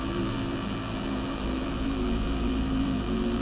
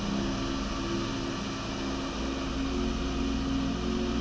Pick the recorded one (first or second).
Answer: second